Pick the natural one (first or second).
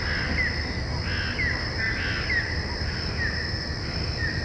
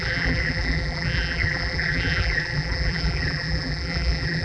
first